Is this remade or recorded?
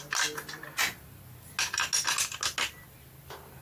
recorded